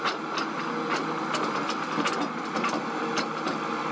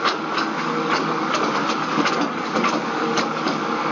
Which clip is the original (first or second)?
first